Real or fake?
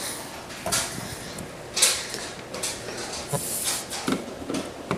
real